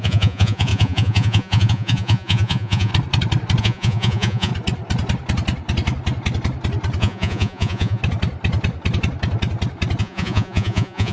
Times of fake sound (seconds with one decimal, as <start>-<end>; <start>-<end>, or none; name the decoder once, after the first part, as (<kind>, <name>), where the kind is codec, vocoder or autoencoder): 0.0-2.9 (vocoder, Vocos); 3.6-4.5; 7.0-8.0; 10.0-11.1